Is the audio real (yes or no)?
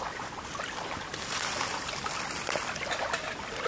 yes